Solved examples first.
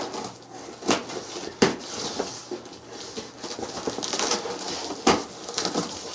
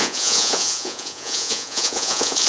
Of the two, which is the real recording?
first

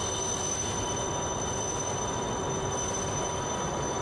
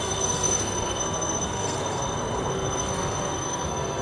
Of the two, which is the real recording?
first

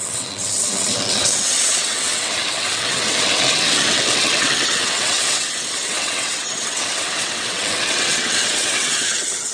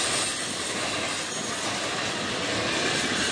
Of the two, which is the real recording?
second